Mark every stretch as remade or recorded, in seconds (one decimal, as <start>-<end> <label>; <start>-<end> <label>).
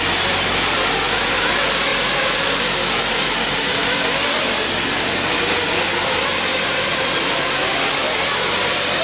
0.0-1.9 recorded; 1.9-2.6 remade; 2.6-3.8 recorded; 3.8-5.3 remade; 5.3-6.5 recorded; 6.5-7.1 remade; 7.1-9.0 recorded